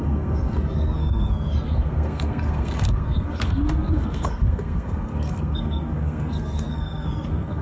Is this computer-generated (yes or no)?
yes